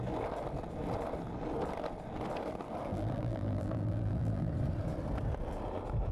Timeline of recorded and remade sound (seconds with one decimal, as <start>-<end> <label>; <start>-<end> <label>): 0.0-2.9 recorded; 2.9-4.5 remade; 4.5-6.1 recorded